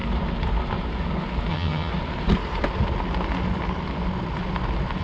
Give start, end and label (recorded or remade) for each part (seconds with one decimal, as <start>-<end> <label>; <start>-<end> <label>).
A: 0.0-1.5 recorded; 1.5-1.9 remade; 1.9-5.0 recorded